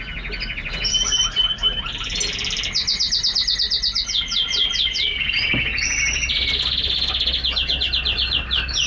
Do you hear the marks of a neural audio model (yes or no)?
no